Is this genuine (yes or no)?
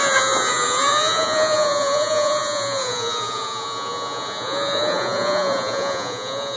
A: no